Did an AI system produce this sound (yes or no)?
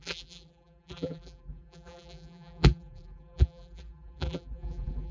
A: yes